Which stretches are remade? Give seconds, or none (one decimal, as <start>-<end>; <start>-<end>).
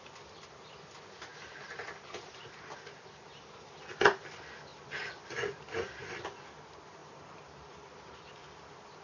4.7-6.0; 7.0-9.0